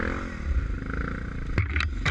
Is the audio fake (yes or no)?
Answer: no